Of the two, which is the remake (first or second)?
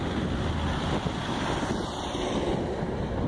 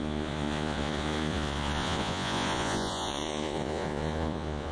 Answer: second